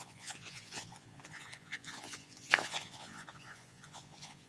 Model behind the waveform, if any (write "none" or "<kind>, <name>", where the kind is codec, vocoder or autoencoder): vocoder, Vocos